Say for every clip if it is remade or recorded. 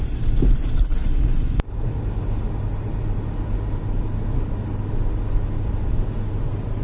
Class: recorded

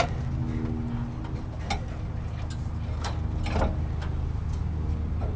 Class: recorded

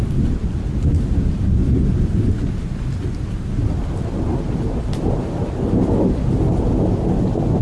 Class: recorded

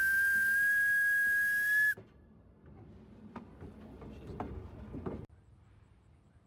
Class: recorded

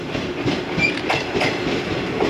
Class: recorded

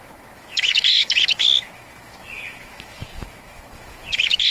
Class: remade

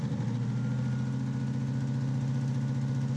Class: recorded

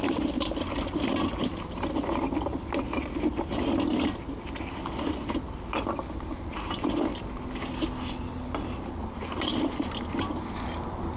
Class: recorded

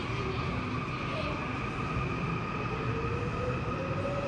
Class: recorded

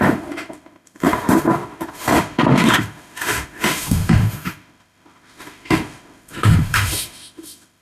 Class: remade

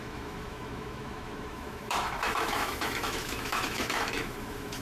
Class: remade